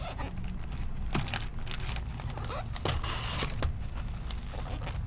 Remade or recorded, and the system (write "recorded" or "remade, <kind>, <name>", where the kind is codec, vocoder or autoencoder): recorded